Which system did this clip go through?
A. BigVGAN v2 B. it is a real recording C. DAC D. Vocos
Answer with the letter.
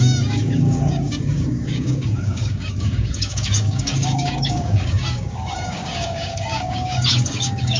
C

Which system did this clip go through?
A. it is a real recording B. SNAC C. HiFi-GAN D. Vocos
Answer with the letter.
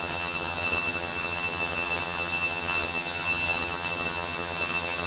C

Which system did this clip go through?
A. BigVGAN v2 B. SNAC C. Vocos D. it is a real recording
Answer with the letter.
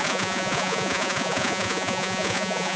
C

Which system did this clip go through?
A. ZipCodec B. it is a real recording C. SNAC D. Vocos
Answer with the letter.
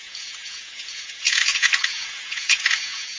D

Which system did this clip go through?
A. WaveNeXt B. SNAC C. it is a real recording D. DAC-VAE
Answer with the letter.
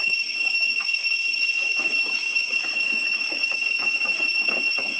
D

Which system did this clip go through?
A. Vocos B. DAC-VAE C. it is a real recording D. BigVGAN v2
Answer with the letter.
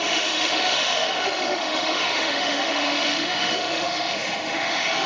B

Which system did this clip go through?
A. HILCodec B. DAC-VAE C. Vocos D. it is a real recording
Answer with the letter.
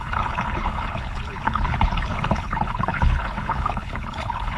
A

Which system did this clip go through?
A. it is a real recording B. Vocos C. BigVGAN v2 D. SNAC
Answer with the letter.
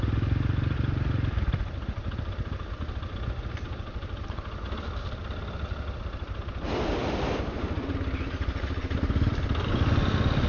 C